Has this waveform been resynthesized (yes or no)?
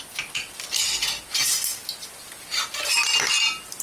no